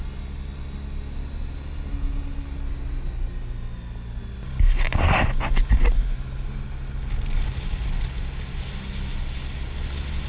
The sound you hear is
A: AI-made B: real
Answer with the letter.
B